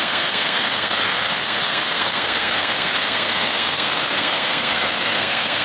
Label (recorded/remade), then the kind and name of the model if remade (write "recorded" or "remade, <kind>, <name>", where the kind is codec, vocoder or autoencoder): remade, codec, SNAC